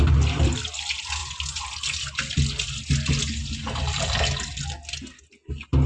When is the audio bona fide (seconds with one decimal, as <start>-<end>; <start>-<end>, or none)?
0.0-5.9